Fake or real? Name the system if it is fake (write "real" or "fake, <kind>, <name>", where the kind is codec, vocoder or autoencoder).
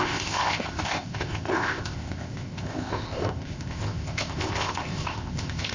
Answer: fake, codec, ZipCodec